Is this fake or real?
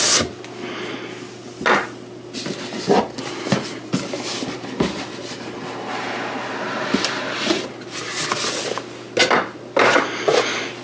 real